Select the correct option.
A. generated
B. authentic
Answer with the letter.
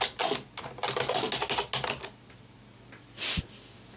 B